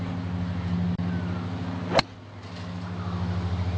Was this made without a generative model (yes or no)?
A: yes